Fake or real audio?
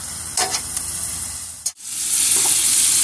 fake